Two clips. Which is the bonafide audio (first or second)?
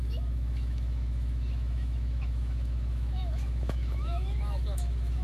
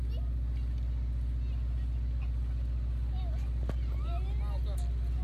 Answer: second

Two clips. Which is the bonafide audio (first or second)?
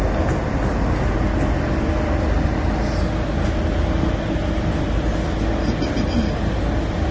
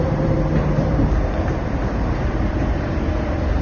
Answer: first